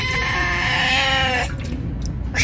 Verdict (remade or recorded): recorded